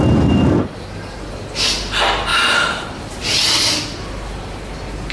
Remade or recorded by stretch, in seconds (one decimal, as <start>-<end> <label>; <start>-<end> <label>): 0.0-5.1 recorded